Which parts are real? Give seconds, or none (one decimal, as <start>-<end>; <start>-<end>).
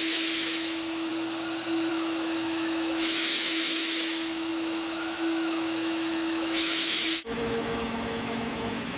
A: 1.1-1.9